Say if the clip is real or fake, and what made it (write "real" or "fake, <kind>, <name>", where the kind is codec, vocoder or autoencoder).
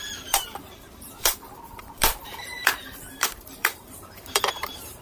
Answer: fake, vocoder, BigVGAN v2